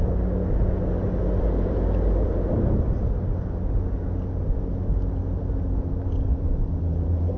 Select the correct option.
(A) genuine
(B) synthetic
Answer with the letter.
A